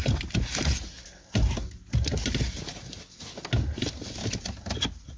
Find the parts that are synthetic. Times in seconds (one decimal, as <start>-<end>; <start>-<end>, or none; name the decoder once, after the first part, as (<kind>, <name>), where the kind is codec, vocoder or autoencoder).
none